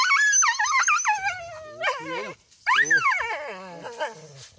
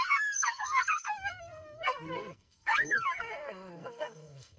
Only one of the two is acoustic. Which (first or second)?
first